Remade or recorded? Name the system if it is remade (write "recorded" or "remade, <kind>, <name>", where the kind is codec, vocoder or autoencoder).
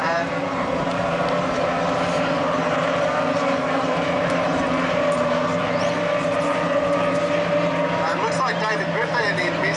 remade, vocoder, BigVGAN v2